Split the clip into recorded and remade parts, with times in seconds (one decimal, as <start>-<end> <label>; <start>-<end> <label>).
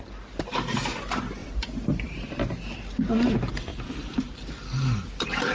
0.0-1.4 recorded; 1.4-2.1 remade; 2.1-3.7 recorded; 3.7-4.5 remade; 4.5-5.5 recorded